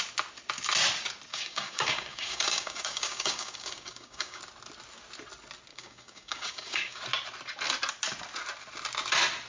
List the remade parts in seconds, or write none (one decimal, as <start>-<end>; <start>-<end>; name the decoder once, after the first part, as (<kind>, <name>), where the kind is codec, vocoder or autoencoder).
1.3-4.4 (codec, DAC); 5.7-7.0